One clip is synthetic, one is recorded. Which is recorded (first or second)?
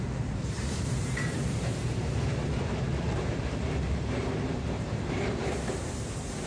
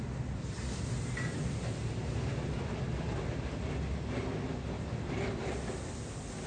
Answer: second